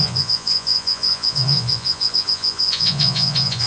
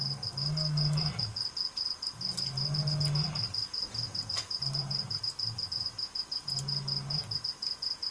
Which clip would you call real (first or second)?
second